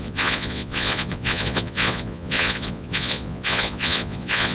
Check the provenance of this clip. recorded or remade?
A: remade